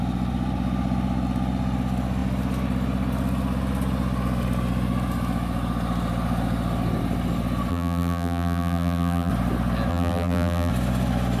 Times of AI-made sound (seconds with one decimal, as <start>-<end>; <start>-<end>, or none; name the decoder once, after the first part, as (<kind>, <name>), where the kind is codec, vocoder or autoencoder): 7.7-9.3 (vocoder, BigVGAN v2); 9.9-10.7